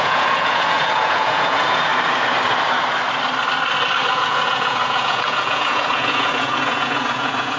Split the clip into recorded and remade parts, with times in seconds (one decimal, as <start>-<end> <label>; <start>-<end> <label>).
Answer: 0.0-1.9 remade; 1.9-4.1 recorded; 4.1-7.6 remade